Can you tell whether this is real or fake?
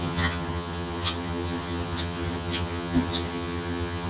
fake